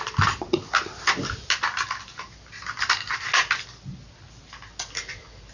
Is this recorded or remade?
recorded